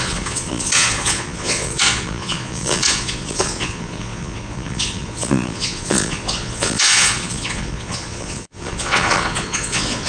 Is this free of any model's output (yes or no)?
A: no